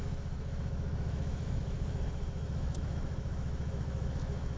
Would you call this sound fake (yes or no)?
yes